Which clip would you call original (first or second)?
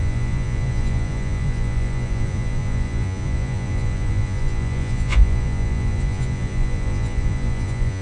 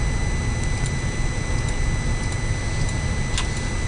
second